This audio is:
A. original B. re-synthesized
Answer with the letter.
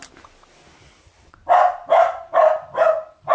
A